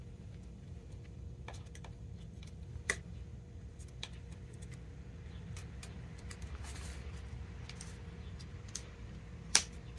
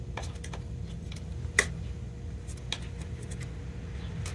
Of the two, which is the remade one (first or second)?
first